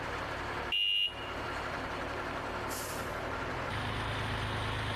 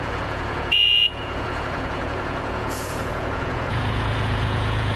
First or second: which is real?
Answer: first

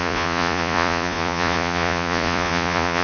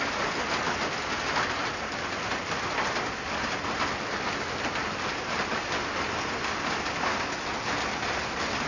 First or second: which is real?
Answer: second